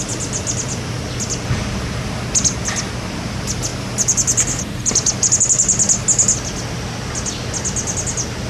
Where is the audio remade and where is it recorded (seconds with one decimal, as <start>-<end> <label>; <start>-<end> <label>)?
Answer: 0.0-8.5 recorded